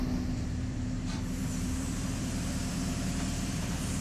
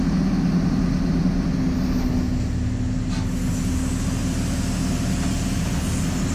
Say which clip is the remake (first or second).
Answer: first